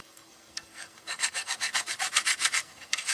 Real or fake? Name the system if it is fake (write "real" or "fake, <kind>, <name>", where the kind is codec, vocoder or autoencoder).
fake, codec, SNAC